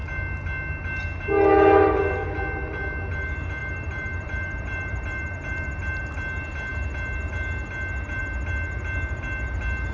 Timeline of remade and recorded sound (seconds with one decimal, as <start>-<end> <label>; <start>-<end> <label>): 0.0-3.6 recorded; 3.6-6.0 remade; 6.0-9.9 recorded